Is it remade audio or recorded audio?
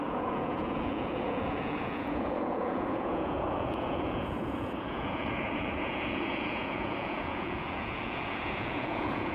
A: remade